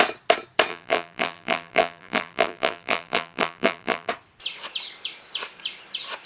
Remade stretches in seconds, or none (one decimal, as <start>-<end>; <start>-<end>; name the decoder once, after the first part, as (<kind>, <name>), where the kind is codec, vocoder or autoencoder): 0.7-4.1 (vocoder, BigVGAN v2)